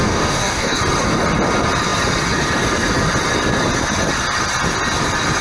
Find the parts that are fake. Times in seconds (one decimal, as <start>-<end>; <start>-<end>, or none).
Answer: 0.0-0.8

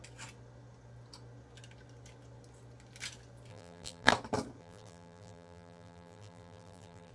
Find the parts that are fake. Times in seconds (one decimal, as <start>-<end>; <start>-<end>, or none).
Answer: 3.5-4.1; 4.6-7.1

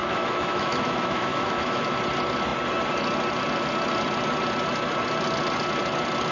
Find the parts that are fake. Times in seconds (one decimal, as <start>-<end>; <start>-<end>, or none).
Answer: 0.0-1.8

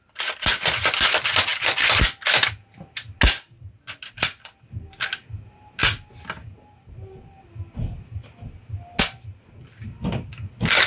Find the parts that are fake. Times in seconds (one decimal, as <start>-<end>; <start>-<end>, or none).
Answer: none

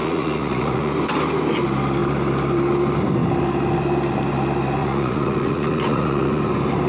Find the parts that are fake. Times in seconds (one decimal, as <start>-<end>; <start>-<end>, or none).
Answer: 0.0-0.9; 4.8-6.4

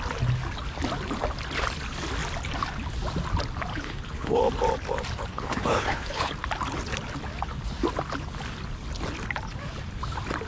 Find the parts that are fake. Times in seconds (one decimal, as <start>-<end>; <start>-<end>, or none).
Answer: 3.7-4.4; 5.3-6.3

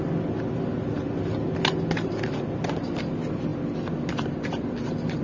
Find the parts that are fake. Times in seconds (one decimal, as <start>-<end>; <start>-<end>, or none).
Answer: none

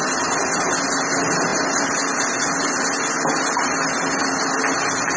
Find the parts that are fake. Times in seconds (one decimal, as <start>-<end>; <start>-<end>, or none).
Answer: none